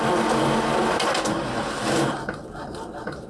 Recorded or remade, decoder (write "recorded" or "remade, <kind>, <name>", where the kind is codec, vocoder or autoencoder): recorded